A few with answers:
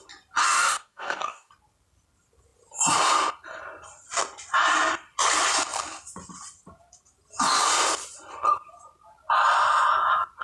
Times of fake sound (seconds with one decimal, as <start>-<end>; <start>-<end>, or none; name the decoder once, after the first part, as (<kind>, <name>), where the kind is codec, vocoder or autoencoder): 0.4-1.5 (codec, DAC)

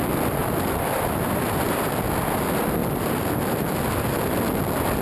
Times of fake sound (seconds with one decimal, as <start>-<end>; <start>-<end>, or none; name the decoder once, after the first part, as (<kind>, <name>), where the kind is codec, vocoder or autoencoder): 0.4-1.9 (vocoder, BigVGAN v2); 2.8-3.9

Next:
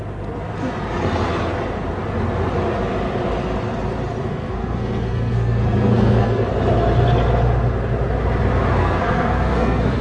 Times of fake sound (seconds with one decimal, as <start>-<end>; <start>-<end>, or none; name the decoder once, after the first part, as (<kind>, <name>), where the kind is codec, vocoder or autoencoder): 4.2-6.5 (codec, SNAC); 8.8-10.0